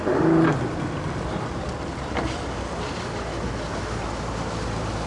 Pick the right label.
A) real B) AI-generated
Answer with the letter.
A